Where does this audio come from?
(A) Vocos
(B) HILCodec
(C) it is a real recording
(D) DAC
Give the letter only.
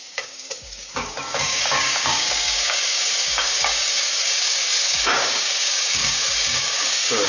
D